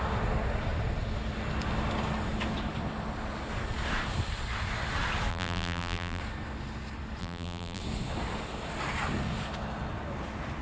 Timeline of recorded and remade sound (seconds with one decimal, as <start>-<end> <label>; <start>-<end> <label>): 0.0-5.3 recorded; 5.3-6.2 remade; 6.2-7.2 recorded; 7.2-7.8 remade; 7.8-10.6 recorded

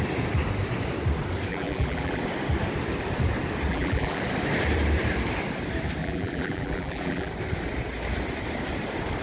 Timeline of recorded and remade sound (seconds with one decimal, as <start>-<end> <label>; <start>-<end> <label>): 0.0-1.5 recorded; 1.5-2.2 remade; 2.2-3.7 recorded; 3.7-4.2 remade; 4.2-6.0 recorded; 6.0-7.3 remade; 7.3-9.2 recorded

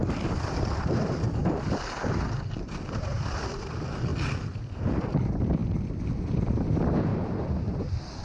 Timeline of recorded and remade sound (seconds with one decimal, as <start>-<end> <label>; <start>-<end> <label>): 0.0-1.4 remade; 1.4-3.5 recorded; 3.5-4.1 remade; 4.1-4.8 recorded; 4.8-5.6 remade; 5.6-6.5 recorded; 6.5-8.2 remade

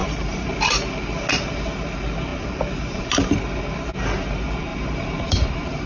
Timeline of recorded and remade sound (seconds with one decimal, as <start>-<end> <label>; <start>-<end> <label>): 0.0-0.5 remade; 0.5-4.7 recorded; 4.7-5.9 remade

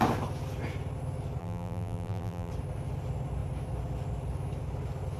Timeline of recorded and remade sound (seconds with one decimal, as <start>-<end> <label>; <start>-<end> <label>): 0.0-1.4 recorded; 1.4-2.5 remade; 2.5-5.2 recorded

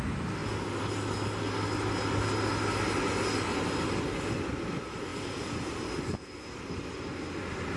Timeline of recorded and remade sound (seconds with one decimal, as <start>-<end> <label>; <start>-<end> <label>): 0.0-5.1 recorded; 5.1-5.9 remade; 5.9-7.8 recorded

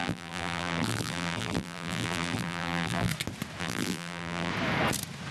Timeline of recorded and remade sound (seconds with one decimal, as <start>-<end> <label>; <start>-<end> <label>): 0.0-3.1 remade; 3.1-3.6 recorded; 3.6-4.5 remade; 4.5-5.3 recorded